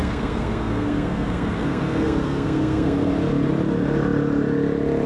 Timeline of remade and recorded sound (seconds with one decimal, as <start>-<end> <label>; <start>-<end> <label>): 0.0-3.1 remade; 3.1-5.1 recorded